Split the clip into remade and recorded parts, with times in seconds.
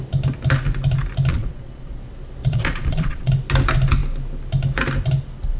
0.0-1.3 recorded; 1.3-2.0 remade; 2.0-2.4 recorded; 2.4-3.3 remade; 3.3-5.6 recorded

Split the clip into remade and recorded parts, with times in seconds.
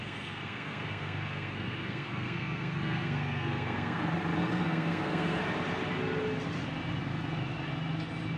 0.0-4.0 remade; 4.0-4.4 recorded; 4.4-5.4 remade; 5.4-8.4 recorded